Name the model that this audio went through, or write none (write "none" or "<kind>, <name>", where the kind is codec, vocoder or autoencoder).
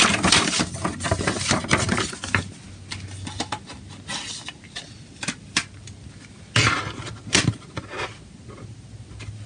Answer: none